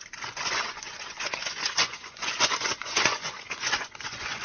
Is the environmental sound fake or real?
fake